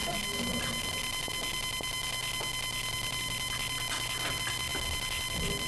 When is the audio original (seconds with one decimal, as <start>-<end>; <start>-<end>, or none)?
0.0-5.7